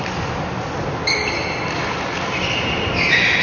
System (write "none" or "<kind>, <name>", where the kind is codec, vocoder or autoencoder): none